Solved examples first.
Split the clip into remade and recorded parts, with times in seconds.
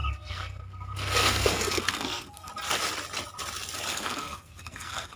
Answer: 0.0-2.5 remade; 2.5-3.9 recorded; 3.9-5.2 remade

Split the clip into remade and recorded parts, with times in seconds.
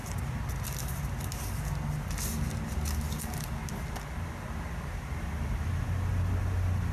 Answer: 0.0-6.9 recorded